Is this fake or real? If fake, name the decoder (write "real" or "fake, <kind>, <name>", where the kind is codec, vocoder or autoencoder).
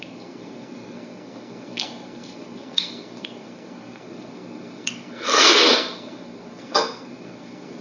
fake, codec, SNAC